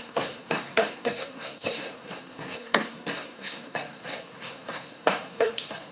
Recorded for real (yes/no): no